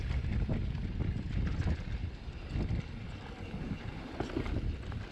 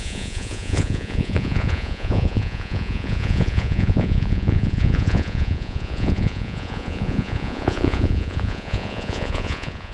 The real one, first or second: first